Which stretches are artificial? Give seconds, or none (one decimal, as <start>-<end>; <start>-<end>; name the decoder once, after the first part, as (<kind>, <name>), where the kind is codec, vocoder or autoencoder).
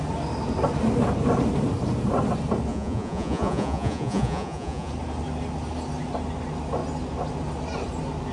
2.7-4.9 (vocoder, Vocos)